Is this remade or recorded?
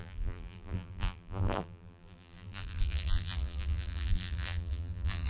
remade